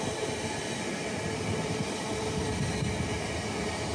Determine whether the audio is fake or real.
real